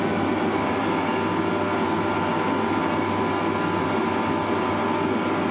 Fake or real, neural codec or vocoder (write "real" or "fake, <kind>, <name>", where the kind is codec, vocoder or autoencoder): real